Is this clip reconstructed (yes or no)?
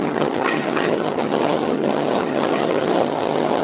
yes